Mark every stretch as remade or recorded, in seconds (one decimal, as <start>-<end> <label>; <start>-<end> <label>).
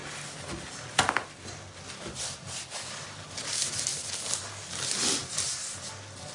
0.0-6.3 recorded